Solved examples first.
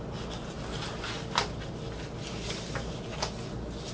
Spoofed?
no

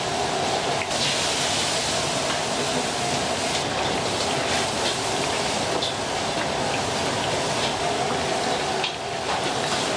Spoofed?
no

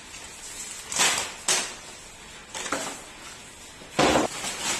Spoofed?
no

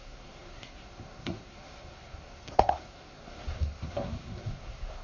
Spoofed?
yes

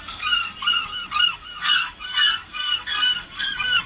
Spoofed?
yes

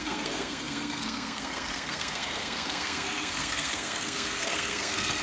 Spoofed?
yes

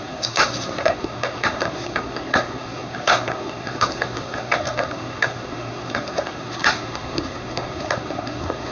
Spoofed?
yes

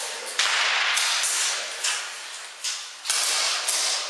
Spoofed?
no